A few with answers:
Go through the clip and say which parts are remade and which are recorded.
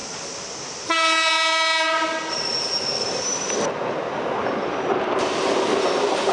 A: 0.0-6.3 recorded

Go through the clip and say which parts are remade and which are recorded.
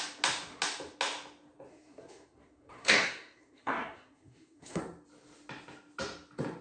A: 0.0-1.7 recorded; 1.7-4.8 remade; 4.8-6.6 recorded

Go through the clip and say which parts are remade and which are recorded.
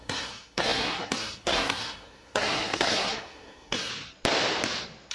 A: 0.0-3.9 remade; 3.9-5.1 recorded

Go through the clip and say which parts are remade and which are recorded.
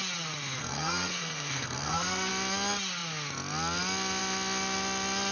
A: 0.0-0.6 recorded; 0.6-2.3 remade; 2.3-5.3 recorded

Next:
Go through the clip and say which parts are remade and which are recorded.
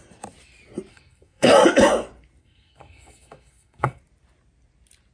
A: 0.0-0.9 recorded; 0.9-1.5 remade; 1.5-2.4 recorded; 2.4-4.0 remade; 4.0-5.1 recorded